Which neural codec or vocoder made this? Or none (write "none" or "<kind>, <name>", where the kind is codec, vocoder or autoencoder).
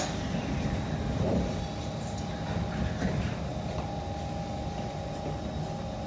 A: none